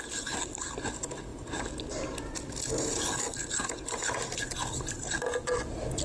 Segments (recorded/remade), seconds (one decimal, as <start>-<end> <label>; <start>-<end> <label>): 0.0-6.0 recorded